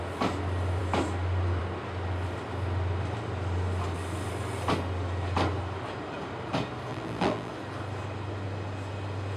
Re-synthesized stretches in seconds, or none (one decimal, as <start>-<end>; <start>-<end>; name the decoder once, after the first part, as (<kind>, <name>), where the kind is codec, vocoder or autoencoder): 6.9-7.5 (vocoder, BigVGAN v2)